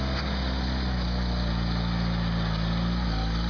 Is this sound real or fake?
real